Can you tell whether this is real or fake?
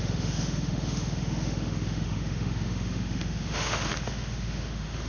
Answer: fake